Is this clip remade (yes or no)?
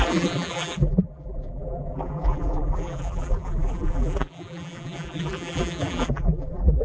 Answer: yes